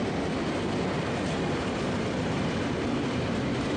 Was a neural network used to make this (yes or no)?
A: no